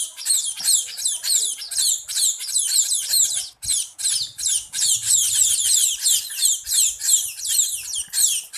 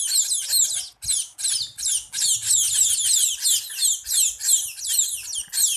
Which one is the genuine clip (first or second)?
second